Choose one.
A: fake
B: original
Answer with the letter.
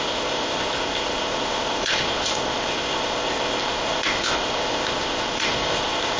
A